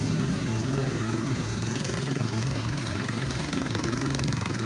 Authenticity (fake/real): fake